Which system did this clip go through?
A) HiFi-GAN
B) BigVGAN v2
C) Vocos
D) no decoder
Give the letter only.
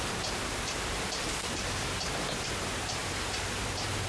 B